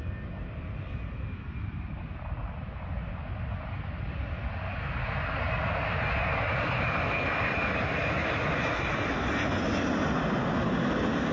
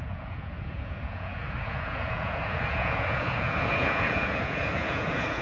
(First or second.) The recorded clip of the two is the first